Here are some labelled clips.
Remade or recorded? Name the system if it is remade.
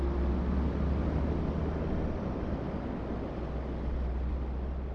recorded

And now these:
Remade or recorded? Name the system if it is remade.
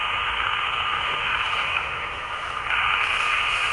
remade, autoencoder, DAC-VAE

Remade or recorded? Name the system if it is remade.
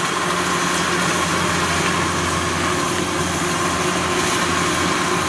recorded